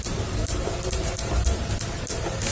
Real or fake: fake